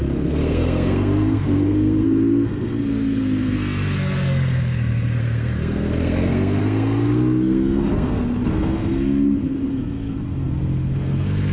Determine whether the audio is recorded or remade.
remade